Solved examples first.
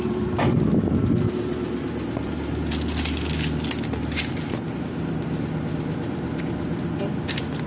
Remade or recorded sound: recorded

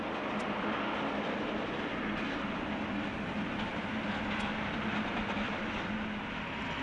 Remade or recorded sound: recorded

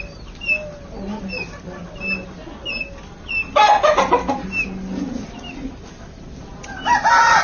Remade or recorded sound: recorded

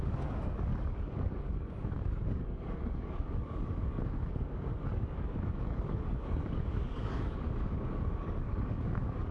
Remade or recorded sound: remade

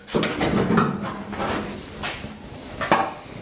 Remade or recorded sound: recorded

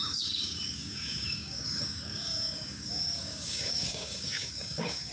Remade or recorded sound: remade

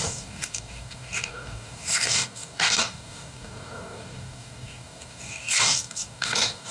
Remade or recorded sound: remade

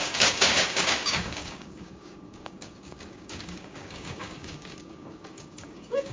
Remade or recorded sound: remade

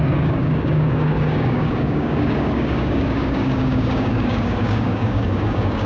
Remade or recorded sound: remade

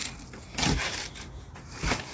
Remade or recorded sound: recorded